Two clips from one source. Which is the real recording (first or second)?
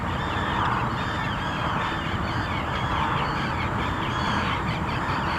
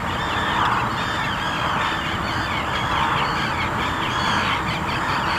second